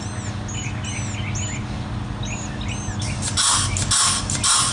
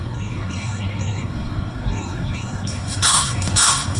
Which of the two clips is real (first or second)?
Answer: first